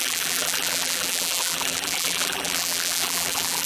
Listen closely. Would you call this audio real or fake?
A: fake